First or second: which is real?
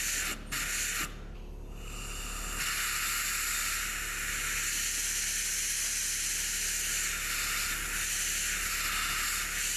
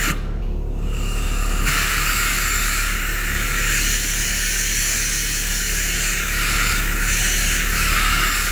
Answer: first